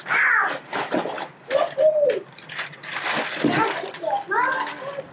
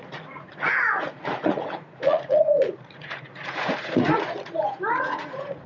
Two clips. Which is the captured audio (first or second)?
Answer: first